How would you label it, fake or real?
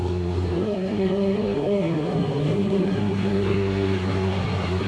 fake